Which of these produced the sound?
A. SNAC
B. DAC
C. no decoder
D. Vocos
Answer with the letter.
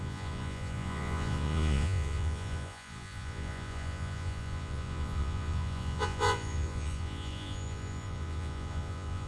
D